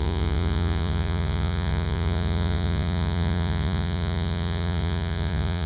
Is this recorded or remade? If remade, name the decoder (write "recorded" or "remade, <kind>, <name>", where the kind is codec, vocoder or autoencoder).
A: remade, vocoder, Vocos